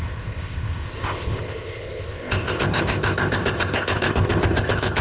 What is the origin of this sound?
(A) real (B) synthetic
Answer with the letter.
B